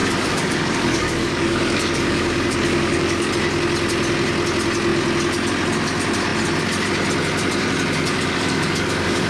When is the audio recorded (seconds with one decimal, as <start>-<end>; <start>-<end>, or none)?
3.3-8.1